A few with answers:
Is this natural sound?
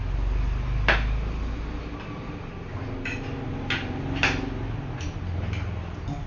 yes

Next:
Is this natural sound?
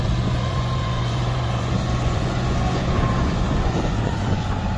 no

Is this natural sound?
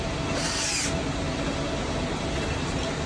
yes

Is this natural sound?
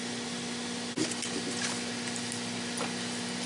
yes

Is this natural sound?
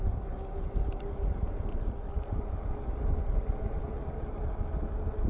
yes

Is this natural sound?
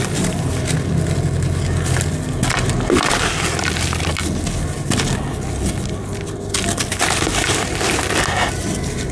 yes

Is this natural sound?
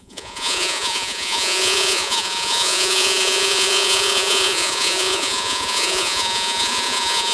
no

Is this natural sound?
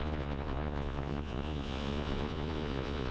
no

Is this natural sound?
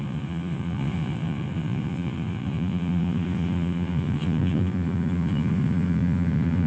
no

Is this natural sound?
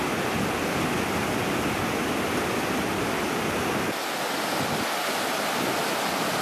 yes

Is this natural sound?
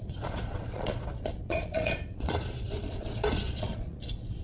no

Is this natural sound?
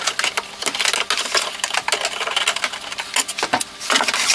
yes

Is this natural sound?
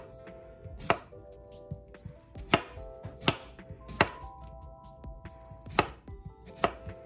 yes